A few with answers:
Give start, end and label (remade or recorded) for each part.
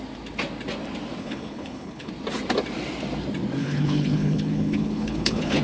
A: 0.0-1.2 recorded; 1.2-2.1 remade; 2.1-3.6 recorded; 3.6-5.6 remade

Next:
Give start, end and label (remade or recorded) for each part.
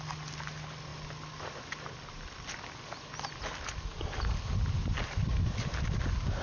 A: 0.0-6.4 recorded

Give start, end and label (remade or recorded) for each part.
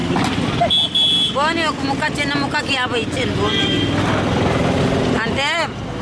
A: 0.0-6.0 recorded